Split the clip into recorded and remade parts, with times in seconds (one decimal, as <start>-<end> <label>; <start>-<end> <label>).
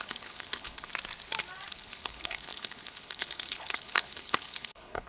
0.0-0.9 remade; 0.9-1.7 recorded; 1.7-5.1 remade